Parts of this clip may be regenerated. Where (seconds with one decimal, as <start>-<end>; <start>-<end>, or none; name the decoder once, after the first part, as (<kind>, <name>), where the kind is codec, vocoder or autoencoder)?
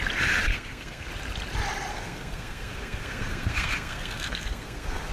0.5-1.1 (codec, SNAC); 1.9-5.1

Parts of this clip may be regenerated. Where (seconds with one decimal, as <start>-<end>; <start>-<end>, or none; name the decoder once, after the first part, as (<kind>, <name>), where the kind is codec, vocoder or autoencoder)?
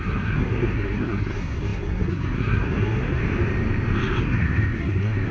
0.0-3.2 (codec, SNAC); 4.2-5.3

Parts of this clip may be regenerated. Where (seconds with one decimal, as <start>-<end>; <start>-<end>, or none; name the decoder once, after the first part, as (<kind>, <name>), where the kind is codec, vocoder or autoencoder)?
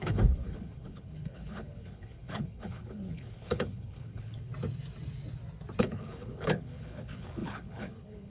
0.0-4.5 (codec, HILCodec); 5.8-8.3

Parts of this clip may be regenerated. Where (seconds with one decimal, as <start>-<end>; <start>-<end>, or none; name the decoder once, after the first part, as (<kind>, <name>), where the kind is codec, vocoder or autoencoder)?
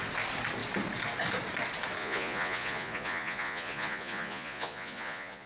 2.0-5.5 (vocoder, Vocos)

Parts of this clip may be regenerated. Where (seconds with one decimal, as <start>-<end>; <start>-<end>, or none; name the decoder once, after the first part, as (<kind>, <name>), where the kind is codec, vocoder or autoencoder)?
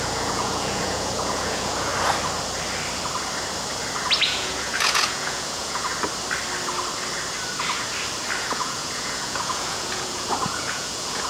0.0-1.9 (vocoder, Vocos); 4.2-5.9; 8.4-11.3